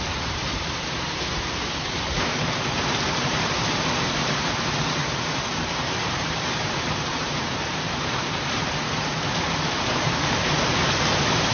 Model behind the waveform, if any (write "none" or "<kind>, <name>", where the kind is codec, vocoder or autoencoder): vocoder, BigVGAN v2